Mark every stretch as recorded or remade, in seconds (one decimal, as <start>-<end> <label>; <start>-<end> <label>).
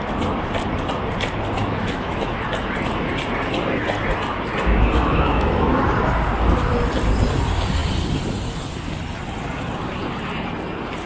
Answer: 0.0-1.6 recorded; 1.6-2.2 remade; 2.2-5.0 recorded; 5.0-5.8 remade; 5.8-11.1 recorded